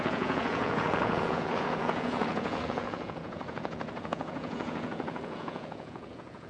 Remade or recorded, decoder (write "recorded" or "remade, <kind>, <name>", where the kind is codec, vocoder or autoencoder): remade, vocoder, Vocos